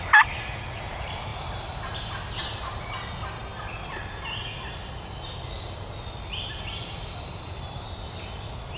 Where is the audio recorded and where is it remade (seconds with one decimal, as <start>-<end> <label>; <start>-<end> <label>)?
0.0-8.8 recorded